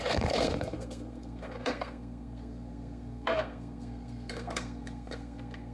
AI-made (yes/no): yes